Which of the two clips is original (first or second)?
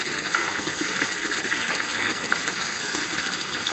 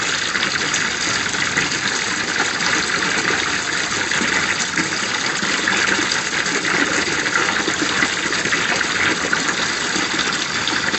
second